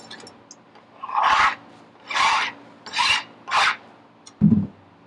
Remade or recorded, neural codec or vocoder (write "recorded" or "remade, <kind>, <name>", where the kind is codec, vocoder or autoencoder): recorded